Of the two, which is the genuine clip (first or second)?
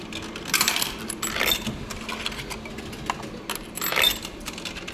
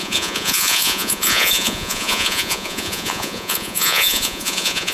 first